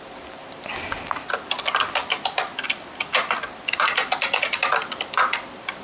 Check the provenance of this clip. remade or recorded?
recorded